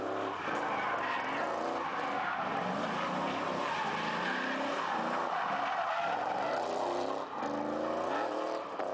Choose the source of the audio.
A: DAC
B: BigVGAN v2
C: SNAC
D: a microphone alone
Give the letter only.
D